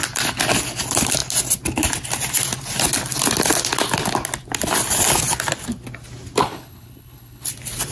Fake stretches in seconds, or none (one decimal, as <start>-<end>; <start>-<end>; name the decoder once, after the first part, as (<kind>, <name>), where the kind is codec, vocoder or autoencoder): 6.4-7.5 (codec, HILCodec)